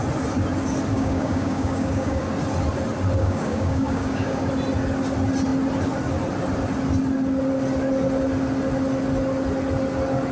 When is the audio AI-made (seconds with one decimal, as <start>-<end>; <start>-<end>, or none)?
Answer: 0.9-2.2; 3.2-4.5